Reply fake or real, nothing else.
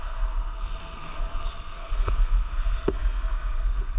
fake